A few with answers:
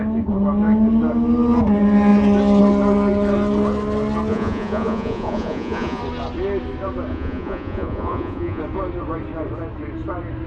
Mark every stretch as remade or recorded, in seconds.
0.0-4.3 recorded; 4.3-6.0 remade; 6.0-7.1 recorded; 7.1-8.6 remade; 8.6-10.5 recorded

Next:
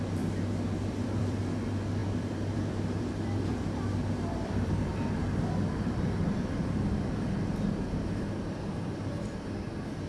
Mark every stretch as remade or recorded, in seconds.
0.0-0.9 recorded; 0.9-1.4 remade; 1.4-2.0 recorded; 2.0-5.1 remade; 5.1-10.1 recorded